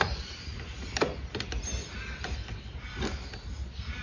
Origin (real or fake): real